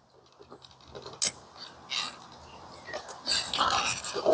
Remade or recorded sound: recorded